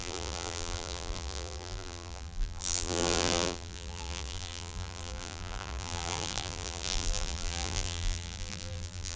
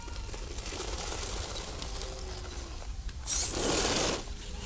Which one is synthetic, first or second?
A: first